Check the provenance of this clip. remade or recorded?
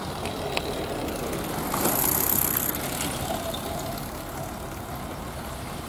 recorded